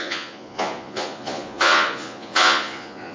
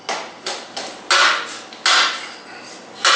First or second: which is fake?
first